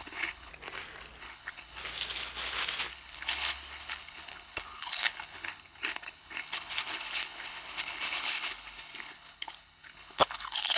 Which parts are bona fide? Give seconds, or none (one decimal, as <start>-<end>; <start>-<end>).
0.5-1.2; 1.8-2.9